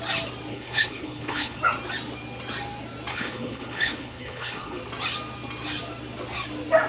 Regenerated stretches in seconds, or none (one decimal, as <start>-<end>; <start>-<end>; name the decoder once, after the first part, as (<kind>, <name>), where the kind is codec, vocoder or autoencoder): 0.5-1.6 (codec, HILCodec); 3.1-4.8